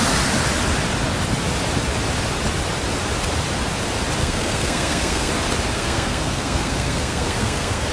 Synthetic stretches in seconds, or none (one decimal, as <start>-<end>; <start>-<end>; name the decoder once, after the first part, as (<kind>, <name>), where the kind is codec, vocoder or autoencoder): 4.2-5.3 (codec, SNAC); 5.7-7.9